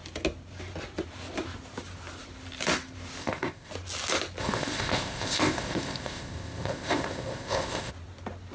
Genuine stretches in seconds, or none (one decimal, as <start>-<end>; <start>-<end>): 0.0-3.2; 3.7-4.4; 7.9-8.5